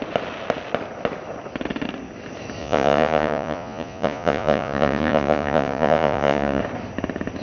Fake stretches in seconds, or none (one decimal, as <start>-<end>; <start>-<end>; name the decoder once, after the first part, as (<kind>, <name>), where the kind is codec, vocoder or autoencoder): 2.6-6.6 (vocoder, Vocos)